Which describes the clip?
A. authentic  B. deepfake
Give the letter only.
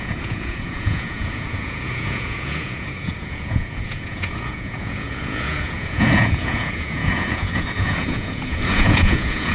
B